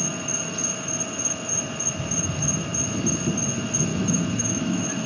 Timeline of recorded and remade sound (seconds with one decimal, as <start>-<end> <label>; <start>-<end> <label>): 0.0-3.9 recorded; 3.9-5.1 remade